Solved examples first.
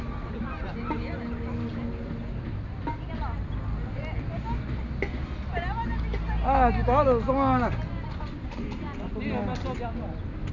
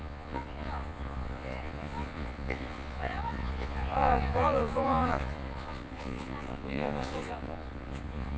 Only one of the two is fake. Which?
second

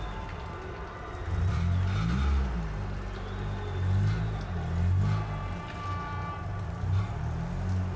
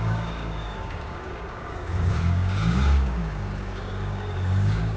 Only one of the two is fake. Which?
second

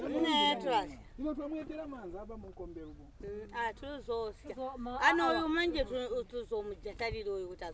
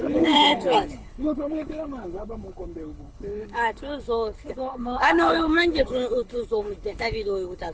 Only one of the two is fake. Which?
second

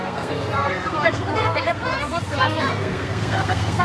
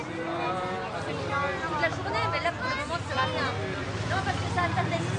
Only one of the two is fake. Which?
first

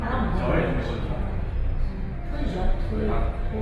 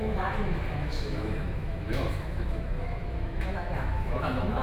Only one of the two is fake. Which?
second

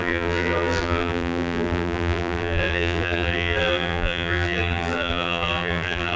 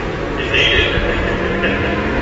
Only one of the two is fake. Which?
first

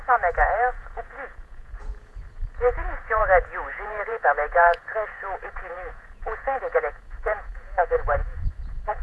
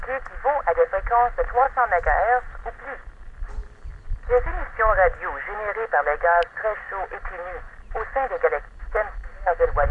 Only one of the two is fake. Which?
first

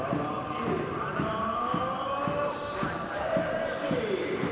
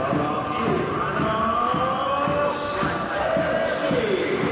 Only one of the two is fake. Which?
first